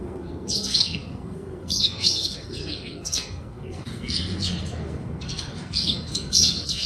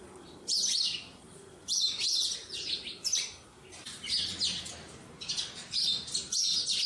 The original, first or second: second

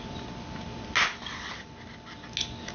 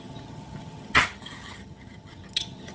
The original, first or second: first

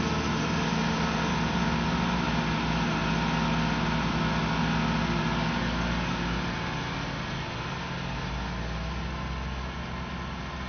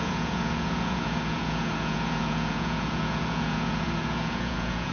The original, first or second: first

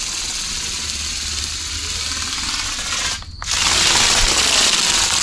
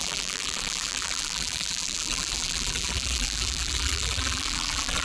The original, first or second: first